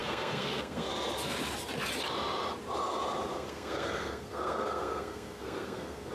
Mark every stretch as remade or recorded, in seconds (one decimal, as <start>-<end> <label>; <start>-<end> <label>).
0.0-0.9 remade; 0.9-3.3 recorded; 3.3-6.1 remade